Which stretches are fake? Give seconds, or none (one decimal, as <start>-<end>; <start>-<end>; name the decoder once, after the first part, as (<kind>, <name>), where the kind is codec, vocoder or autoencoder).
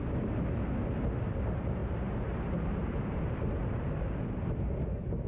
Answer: 1.8-5.3 (vocoder, BigVGAN v2)